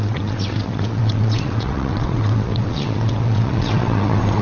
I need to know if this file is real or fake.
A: fake